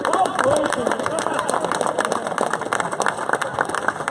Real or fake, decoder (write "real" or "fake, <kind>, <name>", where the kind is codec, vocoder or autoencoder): real